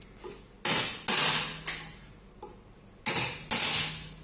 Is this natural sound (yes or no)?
yes